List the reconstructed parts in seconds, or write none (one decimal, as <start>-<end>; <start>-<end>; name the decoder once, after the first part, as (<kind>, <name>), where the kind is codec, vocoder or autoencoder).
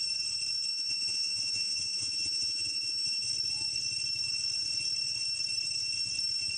0.7-3.3 (vocoder, Vocos)